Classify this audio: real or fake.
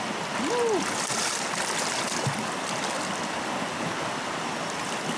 real